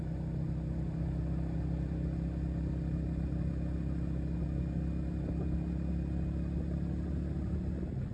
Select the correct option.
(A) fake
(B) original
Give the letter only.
B